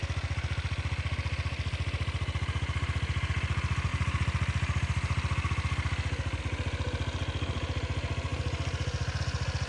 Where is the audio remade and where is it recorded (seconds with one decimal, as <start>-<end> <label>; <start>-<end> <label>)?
0.0-9.7 recorded